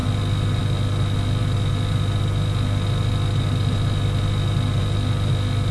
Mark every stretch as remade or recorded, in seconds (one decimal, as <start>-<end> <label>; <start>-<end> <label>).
0.0-5.7 recorded